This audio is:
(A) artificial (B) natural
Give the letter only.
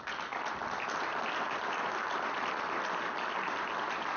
B